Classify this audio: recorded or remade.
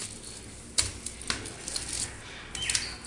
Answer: recorded